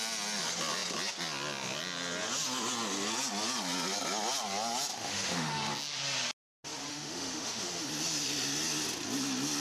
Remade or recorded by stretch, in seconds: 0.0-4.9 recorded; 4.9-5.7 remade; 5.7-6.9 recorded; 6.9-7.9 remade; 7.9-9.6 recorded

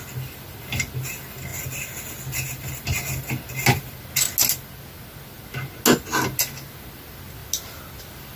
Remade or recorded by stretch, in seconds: 0.0-8.4 recorded